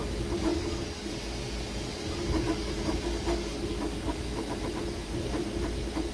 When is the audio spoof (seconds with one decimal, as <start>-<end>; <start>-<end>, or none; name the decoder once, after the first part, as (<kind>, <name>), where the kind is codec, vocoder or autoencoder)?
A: 0.5-1.1 (codec, DAC); 1.9-4.6